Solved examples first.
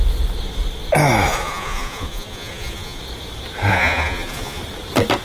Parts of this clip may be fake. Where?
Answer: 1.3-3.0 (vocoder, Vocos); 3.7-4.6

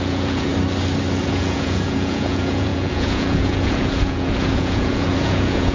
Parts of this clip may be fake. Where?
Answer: 0.0-0.5 (vocoder, Vocos); 1.2-5.7

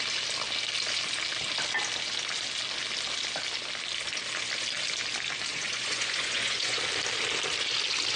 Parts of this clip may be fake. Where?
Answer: 5.5-6.8 (vocoder, Vocos)

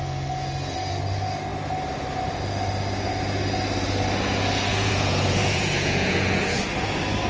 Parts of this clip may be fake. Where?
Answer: 4.7-6.6 (vocoder, Vocos)

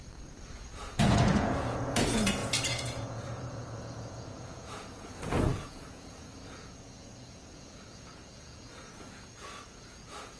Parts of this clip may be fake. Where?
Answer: 0.0-10.4 (vocoder, Vocos)